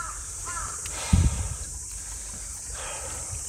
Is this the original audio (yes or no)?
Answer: no